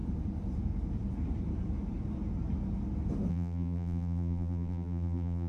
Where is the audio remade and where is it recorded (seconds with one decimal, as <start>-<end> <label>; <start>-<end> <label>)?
0.0-3.3 recorded; 3.3-5.5 remade